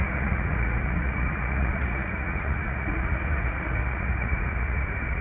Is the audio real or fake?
fake